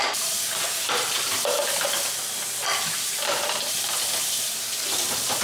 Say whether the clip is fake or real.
fake